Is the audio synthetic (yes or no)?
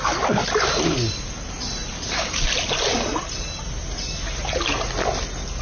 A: no